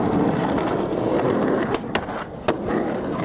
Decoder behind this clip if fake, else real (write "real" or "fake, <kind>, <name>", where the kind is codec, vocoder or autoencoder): real